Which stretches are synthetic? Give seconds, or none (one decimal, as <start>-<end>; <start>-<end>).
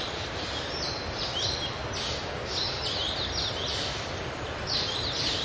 0.0-1.8; 4.1-5.4